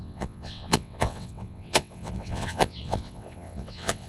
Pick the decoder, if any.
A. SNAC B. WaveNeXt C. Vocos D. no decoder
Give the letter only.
B